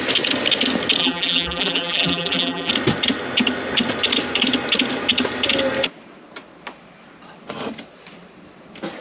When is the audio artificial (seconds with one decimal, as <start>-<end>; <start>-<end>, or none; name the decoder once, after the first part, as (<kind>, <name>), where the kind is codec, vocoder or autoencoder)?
1.0-2.7 (vocoder, BigVGAN v2)